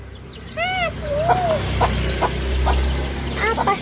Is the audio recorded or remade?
recorded